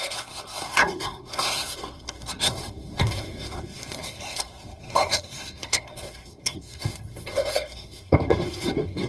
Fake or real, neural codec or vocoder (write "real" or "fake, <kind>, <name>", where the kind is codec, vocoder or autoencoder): fake, codec, SNAC